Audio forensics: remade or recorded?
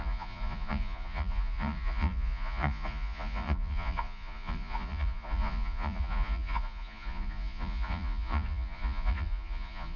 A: remade